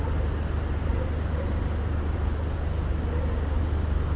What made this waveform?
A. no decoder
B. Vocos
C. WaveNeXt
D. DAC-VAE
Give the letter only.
A